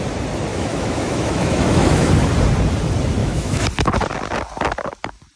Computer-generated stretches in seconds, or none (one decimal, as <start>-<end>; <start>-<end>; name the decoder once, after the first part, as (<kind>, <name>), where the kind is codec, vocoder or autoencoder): 0.5-2.1 (autoencoder, DAC-VAE); 3.2-3.7